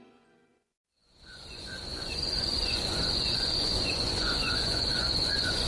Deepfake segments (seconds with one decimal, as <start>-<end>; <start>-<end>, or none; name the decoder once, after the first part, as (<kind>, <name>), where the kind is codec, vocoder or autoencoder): 0.0-5.7 (vocoder, Vocos)